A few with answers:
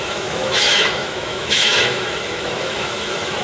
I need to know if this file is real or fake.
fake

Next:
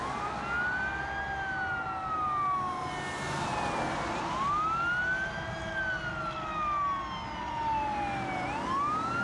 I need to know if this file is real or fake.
real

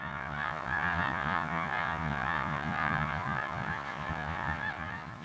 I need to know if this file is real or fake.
fake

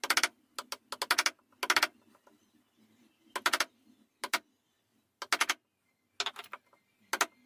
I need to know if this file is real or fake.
real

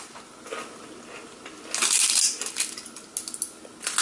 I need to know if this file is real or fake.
real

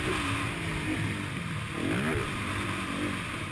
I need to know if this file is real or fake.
real